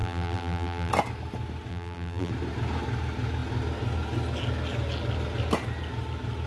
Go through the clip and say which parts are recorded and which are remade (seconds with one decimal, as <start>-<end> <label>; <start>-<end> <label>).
0.0-0.9 remade; 0.9-1.7 recorded; 1.7-2.3 remade; 2.3-6.5 recorded